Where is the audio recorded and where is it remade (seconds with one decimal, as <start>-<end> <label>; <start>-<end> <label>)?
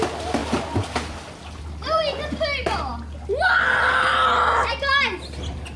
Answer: 0.0-5.8 recorded